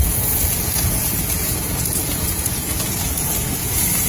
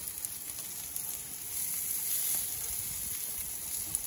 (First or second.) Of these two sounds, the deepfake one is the first